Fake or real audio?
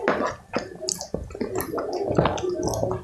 real